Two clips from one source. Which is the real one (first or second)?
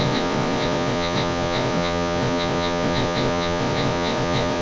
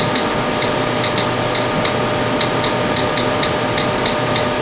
second